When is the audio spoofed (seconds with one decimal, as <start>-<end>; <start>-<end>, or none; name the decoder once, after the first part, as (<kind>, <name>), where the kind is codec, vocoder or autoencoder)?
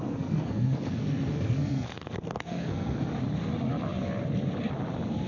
0.0-3.1 (codec, SNAC)